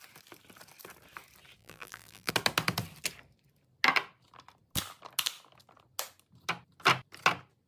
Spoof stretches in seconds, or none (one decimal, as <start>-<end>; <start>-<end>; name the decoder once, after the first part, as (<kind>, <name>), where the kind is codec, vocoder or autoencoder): 1.6-2.3 (vocoder, BigVGAN v2)